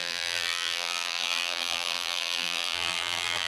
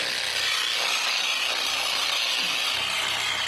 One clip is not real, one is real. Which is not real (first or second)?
first